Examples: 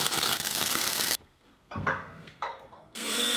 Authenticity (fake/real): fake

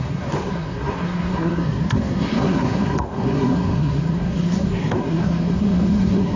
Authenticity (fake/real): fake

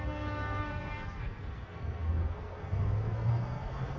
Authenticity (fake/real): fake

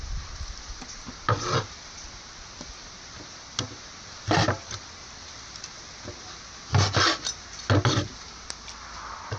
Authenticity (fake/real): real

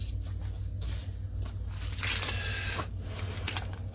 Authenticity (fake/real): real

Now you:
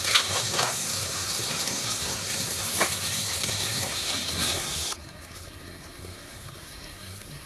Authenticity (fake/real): fake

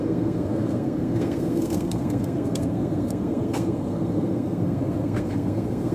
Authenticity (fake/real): fake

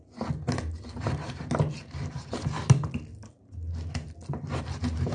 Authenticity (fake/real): real